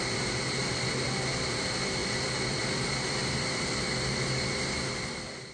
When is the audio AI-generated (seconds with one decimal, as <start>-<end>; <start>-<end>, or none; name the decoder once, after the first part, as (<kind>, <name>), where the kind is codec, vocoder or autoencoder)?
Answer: none